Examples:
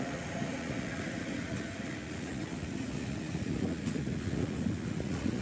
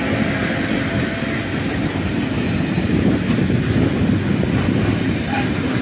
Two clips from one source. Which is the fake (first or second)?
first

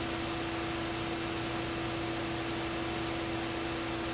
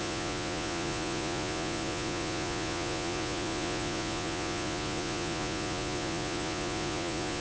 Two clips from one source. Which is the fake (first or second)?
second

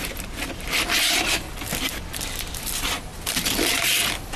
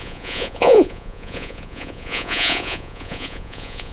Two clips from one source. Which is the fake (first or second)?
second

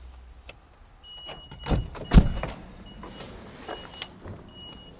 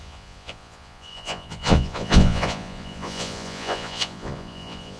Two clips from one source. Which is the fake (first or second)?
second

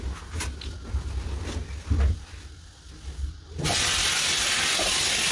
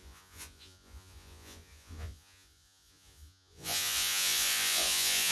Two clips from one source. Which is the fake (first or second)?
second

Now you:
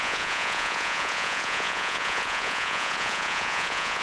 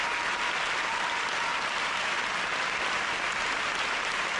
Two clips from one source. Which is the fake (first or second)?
first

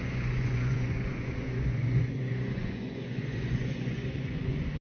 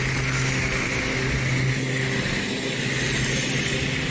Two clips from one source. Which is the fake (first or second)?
first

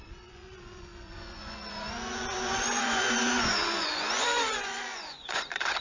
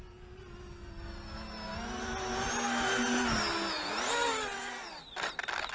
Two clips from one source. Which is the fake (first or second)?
first